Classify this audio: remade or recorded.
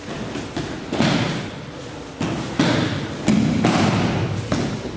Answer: recorded